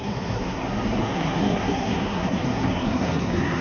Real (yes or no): no